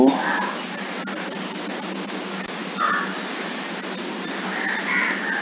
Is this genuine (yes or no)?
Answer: yes